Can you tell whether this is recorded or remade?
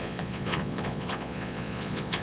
remade